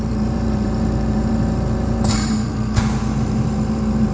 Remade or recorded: remade